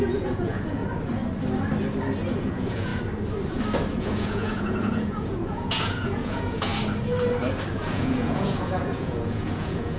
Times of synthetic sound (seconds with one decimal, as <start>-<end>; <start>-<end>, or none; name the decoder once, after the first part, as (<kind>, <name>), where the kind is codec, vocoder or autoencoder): 0.0-0.8 (vocoder, Vocos); 2.3-2.9; 3.9-6.7; 7.7-10.0